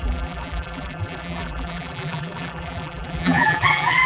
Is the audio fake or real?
fake